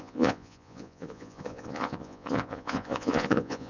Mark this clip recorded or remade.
remade